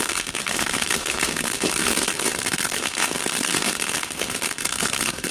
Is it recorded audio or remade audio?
remade